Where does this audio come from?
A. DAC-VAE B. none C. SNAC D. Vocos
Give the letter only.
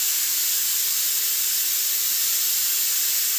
B